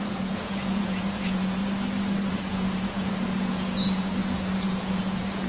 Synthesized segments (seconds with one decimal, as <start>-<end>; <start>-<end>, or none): 0.0-1.6; 2.3-5.5